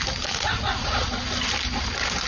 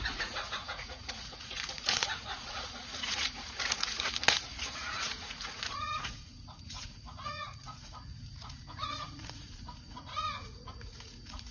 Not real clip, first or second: second